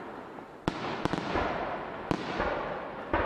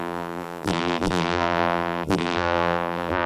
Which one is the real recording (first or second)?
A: first